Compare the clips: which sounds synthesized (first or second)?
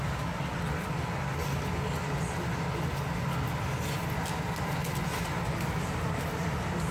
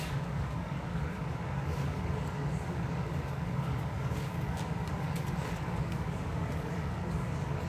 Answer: second